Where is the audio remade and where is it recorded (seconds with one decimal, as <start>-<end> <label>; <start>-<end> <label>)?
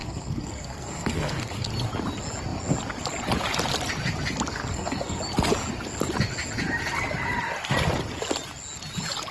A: 0.0-1.7 remade; 1.7-4.5 recorded; 4.5-5.2 remade; 5.2-9.3 recorded